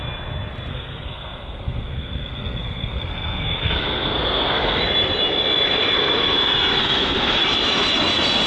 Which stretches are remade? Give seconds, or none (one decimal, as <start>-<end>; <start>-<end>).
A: 0.7-4.8; 6.8-7.4